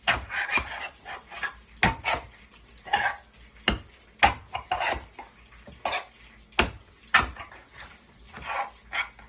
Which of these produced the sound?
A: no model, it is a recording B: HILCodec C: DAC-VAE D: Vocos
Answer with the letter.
A